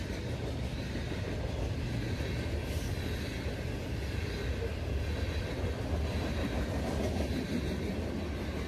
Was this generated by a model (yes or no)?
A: no